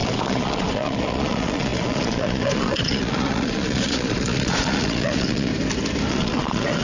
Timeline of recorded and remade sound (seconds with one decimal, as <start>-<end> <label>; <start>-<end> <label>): 0.0-5.5 remade; 5.5-6.1 recorded; 6.1-6.8 remade